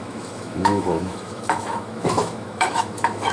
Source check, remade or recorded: remade